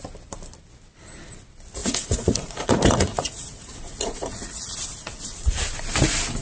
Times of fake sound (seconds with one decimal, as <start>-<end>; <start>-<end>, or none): 1.8-5.6